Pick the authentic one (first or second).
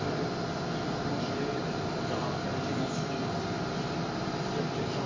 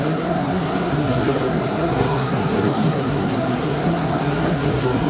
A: first